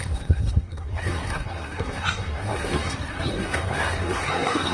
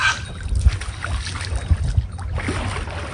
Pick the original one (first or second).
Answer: second